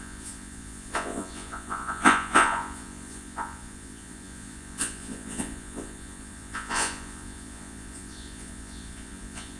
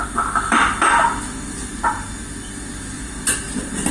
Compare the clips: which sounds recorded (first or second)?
second